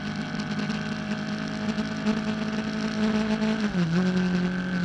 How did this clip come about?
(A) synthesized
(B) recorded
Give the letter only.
B